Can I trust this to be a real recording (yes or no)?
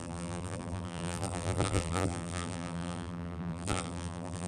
no